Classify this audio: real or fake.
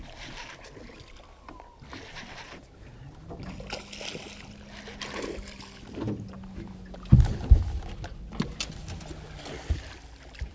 real